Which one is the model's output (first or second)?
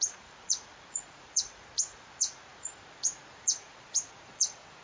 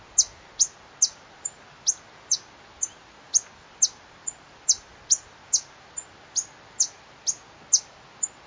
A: first